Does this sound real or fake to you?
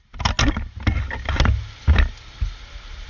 real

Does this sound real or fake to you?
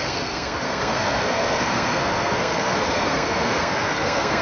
fake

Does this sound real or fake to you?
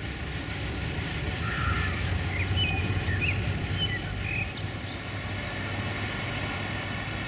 real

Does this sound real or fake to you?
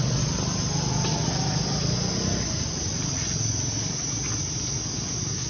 real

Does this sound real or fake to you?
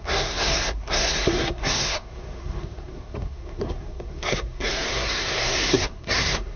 fake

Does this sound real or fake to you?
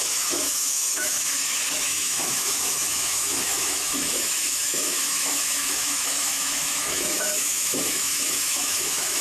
fake